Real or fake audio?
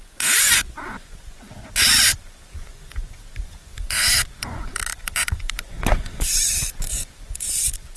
fake